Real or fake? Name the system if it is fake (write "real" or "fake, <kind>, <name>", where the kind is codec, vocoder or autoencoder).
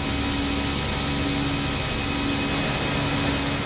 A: real